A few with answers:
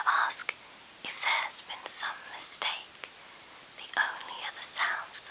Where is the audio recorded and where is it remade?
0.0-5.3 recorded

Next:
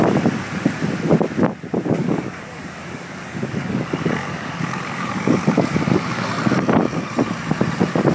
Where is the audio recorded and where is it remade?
0.0-2.0 recorded; 2.0-6.3 remade; 6.3-8.1 recorded

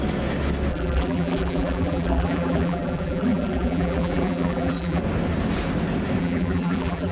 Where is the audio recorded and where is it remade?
0.0-0.7 recorded; 0.7-5.0 remade; 5.0-6.2 recorded; 6.2-7.1 remade

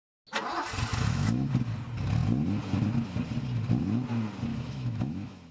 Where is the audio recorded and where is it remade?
0.0-0.9 recorded; 0.9-1.5 remade; 1.5-4.5 recorded; 4.5-5.5 remade

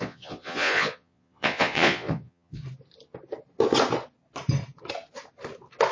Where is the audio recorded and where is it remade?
0.0-2.6 remade; 2.6-5.9 recorded

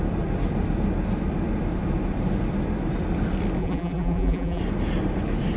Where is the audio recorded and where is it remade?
0.0-3.6 recorded; 3.6-4.6 remade; 4.6-5.6 recorded

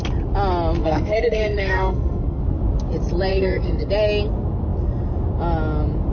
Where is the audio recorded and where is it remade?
0.0-0.8 recorded; 0.8-2.4 remade; 2.4-3.3 recorded; 3.3-3.9 remade; 3.9-6.1 recorded

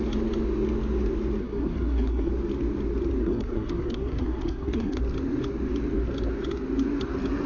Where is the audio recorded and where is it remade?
0.0-1.4 recorded; 1.4-2.3 remade; 2.3-3.2 recorded; 3.2-5.0 remade; 5.0-7.5 recorded